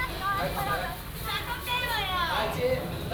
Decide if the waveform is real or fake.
real